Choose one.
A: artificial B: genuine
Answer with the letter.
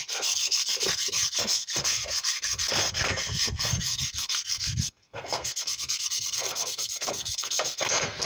A